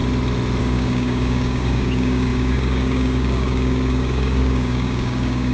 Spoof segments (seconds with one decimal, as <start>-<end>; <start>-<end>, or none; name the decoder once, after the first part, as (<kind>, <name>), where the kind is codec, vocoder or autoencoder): 0.6-5.5 (codec, DAC)